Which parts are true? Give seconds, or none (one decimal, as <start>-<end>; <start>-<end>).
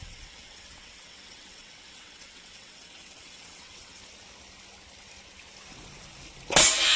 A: 4.0-7.0